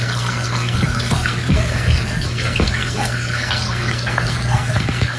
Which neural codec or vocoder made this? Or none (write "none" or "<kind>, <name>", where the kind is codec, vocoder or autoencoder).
codec, SNAC